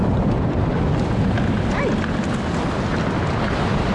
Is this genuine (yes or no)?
yes